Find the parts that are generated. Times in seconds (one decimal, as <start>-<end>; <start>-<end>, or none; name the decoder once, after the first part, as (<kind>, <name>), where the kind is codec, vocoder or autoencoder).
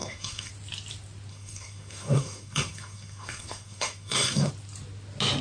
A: 0.0-0.5 (codec, SNAC); 1.3-4.5